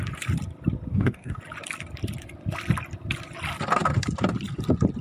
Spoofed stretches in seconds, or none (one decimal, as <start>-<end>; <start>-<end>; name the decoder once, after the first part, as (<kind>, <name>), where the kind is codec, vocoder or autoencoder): 0.9-1.4 (codec, DAC)